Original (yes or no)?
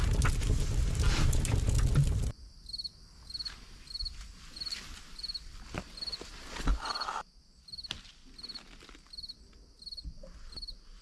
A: yes